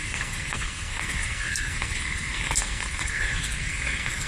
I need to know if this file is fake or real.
fake